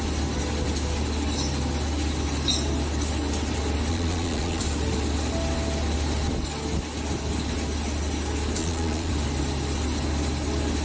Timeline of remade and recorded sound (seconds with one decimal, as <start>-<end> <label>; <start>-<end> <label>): 0.0-3.9 recorded; 3.9-4.6 remade; 4.6-8.6 recorded; 8.6-9.1 remade; 9.1-10.8 recorded